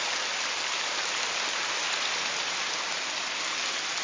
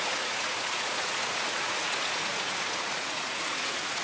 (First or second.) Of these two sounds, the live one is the first